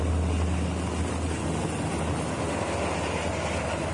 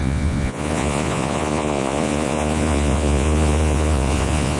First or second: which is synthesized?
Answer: second